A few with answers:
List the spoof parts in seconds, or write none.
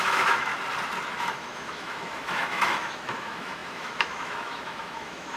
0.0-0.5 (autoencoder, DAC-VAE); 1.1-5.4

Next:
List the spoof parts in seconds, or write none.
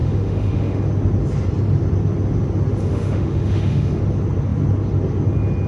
0.0-0.8 (autoencoder, DAC-VAE); 2.8-4.0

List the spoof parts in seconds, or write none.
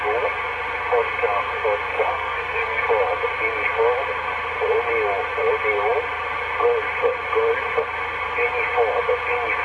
1.9-2.8 (codec, SNAC)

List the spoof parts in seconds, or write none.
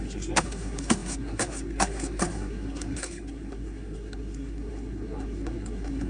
0.0-6.1 (codec, SNAC)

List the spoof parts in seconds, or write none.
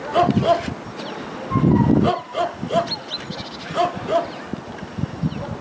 none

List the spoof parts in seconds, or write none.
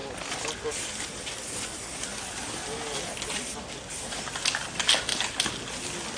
none